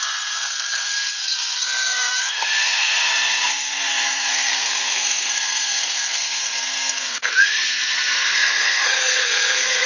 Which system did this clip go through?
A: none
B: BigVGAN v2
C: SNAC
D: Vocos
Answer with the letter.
C